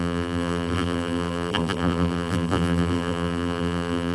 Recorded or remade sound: remade